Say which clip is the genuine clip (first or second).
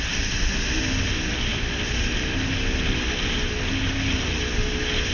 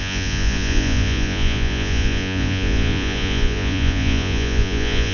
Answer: first